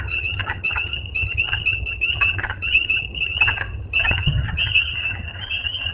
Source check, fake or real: fake